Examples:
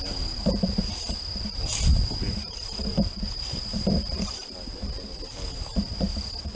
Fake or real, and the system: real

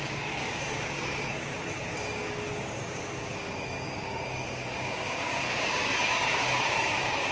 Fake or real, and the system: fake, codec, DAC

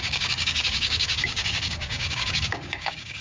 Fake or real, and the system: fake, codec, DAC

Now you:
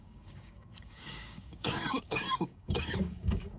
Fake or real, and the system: fake, codec, DAC